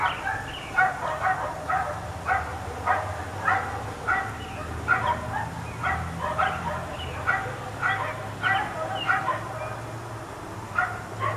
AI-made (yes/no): no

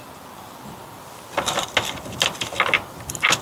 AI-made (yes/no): no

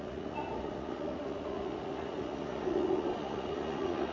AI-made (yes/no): yes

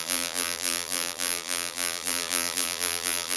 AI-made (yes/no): yes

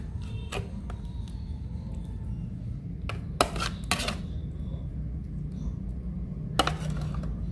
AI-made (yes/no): no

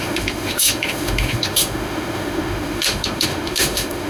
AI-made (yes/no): yes